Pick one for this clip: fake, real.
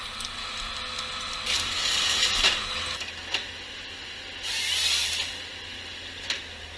real